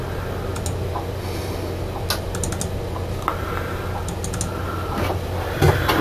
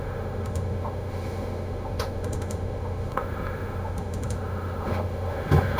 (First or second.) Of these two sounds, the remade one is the second